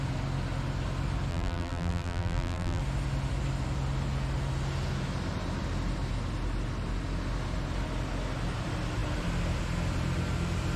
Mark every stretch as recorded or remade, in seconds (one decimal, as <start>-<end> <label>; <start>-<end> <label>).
0.0-1.3 recorded; 1.3-2.8 remade; 2.8-10.8 recorded